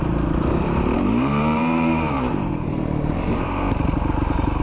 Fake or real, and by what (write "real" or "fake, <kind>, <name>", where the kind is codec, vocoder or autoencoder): fake, vocoder, BigVGAN v2